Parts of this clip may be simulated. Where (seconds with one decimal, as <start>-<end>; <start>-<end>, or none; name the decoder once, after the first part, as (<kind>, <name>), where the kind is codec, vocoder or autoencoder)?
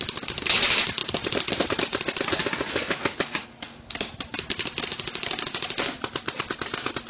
none